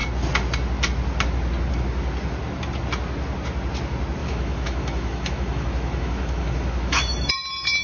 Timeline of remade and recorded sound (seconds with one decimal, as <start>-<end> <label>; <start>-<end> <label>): 0.0-4.2 recorded; 4.2-7.3 remade; 7.3-7.8 recorded